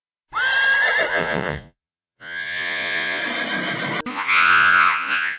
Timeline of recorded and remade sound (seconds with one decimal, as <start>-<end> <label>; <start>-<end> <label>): 0.0-1.1 recorded; 1.1-3.2 remade; 3.2-4.1 recorded; 4.1-5.4 remade